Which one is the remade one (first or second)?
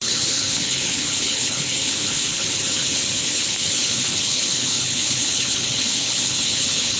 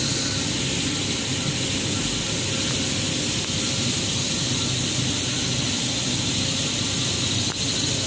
first